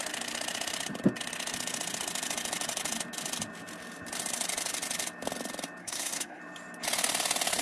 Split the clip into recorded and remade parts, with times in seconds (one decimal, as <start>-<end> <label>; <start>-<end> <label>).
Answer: 0.0-5.8 recorded; 5.8-6.4 remade; 6.4-7.6 recorded